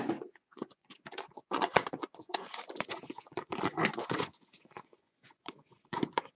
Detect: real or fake fake